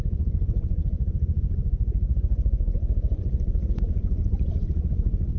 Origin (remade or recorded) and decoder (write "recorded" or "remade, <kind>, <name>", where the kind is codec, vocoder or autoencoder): remade, vocoder, Vocos